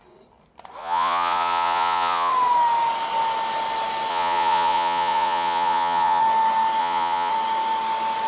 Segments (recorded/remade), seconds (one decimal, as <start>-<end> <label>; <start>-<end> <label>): 0.0-0.8 recorded; 0.8-2.3 remade; 2.3-4.1 recorded; 4.1-6.2 remade; 6.2-6.8 recorded; 6.8-7.3 remade; 7.3-8.3 recorded